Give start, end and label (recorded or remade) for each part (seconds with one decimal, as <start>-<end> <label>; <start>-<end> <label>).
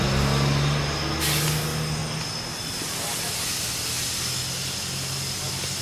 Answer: 0.0-5.8 recorded